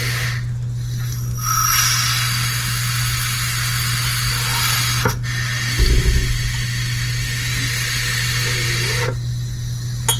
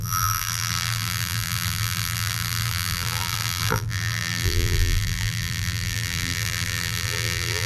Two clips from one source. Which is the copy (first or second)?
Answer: second